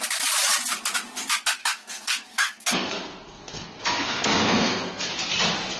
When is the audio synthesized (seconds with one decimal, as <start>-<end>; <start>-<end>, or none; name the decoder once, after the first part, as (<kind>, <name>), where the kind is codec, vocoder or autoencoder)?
1.6-5.1 (codec, SNAC)